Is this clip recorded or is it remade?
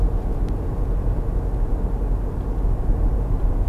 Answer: recorded